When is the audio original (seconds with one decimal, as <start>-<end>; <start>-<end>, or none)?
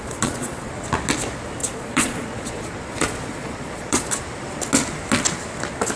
0.7-1.6; 4.1-6.0